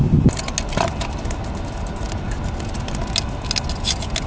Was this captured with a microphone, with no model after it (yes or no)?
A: yes